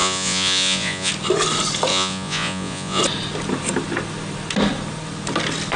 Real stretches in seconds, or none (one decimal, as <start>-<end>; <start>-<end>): 1.1-1.9; 3.0-5.8